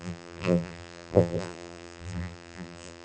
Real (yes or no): no